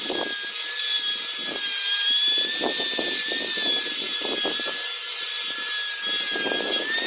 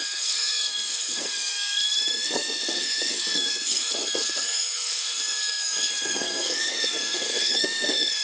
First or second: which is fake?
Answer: second